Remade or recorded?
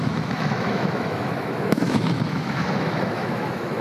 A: remade